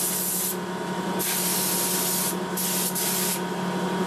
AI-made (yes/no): no